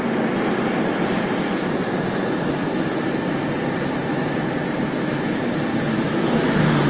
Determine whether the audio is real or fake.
real